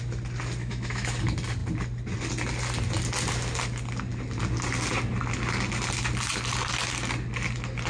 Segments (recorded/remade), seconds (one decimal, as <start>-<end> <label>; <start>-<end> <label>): 0.0-0.6 recorded; 0.6-1.1 remade; 1.1-7.9 recorded